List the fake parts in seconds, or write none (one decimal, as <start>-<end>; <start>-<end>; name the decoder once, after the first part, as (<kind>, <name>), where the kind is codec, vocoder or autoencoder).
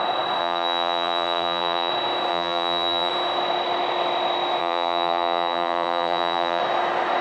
0.4-1.9 (vocoder, BigVGAN v2); 2.3-3.1; 4.6-6.6